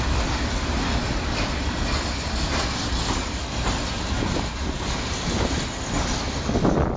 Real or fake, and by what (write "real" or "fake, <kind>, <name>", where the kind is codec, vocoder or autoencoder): real